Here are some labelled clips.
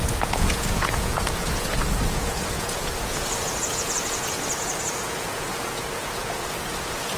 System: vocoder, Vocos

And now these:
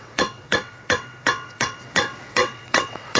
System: vocoder, WaveNeXt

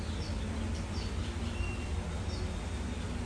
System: none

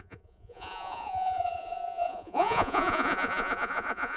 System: vocoder, Vocos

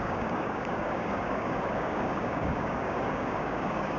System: codec, DAC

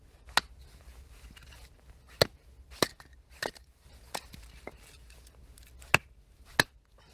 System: none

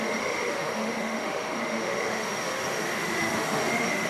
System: autoencoder, DAC-VAE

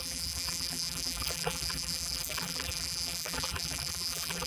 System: vocoder, BigVGAN v2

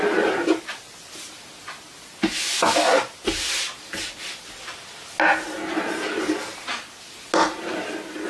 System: none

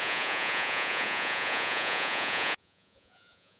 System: vocoder, Vocos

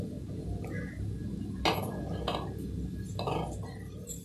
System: none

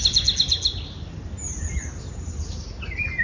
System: none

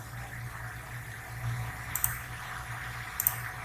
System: none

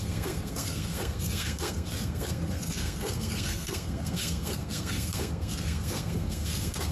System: codec, SNAC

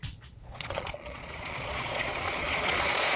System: vocoder, Vocos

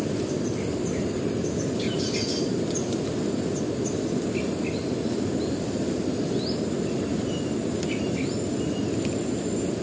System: none